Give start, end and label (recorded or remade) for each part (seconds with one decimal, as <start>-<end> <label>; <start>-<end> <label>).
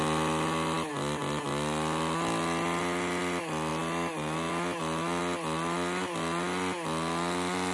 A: 0.0-7.7 recorded